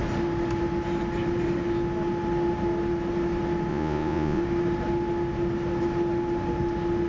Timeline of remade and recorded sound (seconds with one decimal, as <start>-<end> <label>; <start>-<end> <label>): 0.0-3.7 recorded; 3.7-4.4 remade; 4.4-7.1 recorded